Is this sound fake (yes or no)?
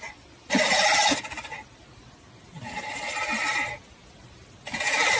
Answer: no